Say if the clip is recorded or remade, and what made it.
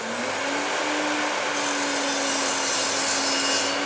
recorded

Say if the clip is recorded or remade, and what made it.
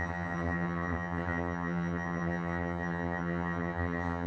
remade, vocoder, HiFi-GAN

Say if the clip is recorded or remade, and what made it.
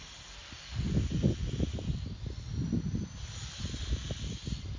recorded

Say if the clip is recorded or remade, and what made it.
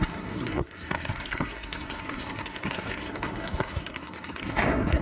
remade, codec, SNAC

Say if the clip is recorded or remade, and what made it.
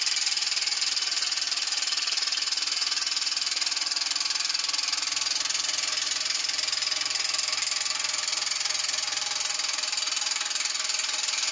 recorded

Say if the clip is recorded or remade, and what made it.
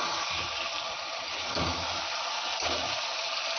recorded